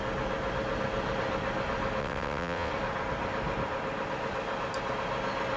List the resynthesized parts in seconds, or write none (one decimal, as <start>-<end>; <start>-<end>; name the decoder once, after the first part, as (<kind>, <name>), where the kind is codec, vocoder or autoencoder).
2.0-2.7 (vocoder, WaveNeXt)